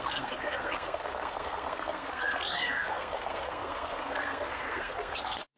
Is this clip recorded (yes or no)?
no